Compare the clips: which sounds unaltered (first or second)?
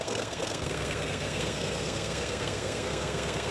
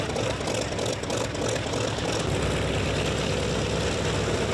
second